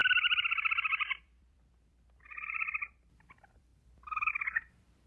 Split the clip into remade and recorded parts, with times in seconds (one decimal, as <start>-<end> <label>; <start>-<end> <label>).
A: 0.0-5.1 remade